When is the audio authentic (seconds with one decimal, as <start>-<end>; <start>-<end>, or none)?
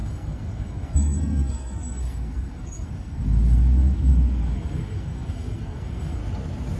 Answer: 6.2-6.8